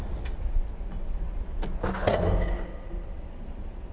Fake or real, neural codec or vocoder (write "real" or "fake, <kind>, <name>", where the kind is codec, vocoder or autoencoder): real